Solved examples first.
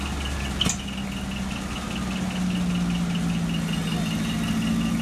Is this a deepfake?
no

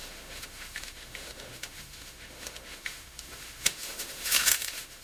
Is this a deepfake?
yes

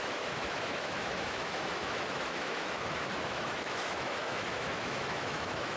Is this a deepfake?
yes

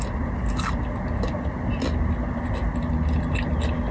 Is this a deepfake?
no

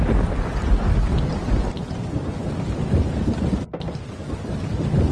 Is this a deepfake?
no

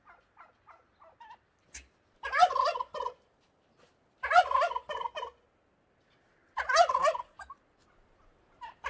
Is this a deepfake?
no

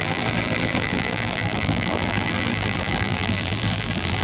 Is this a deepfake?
yes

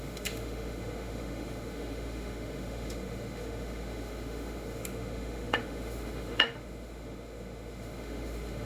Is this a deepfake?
yes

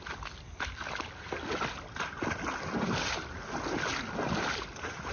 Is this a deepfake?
no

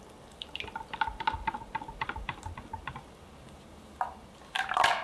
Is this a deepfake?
no